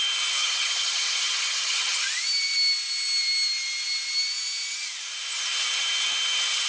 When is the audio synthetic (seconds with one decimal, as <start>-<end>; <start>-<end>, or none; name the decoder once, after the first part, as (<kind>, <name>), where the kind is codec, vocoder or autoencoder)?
0.4-2.0 (vocoder, HiFi-GAN)